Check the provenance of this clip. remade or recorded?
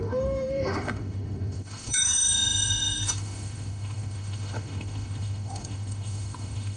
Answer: remade